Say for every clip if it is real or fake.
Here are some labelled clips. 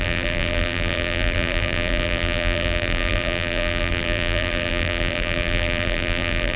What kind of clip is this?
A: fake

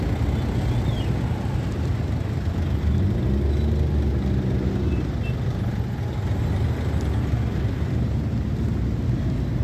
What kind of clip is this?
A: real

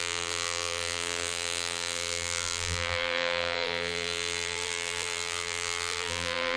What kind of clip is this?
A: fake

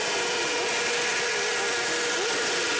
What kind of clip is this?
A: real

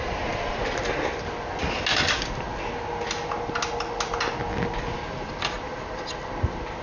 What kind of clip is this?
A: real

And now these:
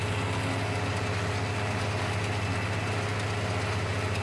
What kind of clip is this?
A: real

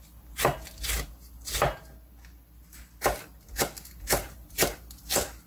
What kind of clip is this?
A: real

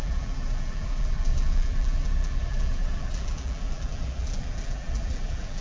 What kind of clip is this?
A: fake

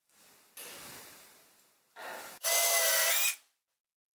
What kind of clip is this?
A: real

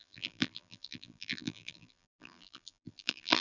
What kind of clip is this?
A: fake